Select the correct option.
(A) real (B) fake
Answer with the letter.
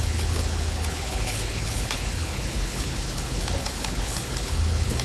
B